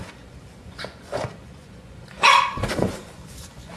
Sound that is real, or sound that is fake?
fake